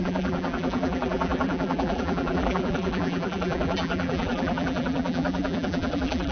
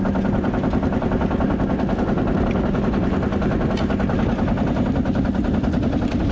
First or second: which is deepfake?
first